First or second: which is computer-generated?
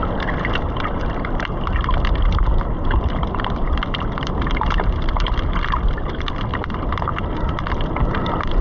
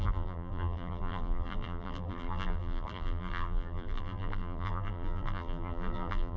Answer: second